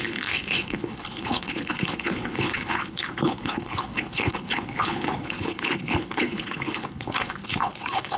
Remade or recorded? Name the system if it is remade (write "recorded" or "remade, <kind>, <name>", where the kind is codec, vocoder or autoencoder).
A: remade, codec, HILCodec